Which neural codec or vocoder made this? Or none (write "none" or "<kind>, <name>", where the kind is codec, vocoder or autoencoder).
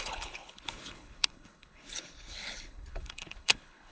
codec, HILCodec